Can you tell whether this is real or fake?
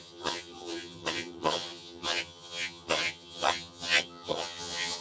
fake